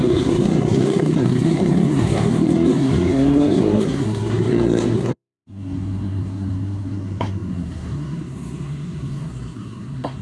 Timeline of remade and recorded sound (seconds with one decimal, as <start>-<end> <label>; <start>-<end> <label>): 0.0-10.2 remade